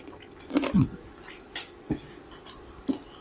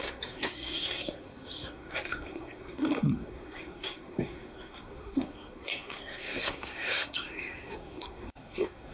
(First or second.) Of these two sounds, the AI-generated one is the second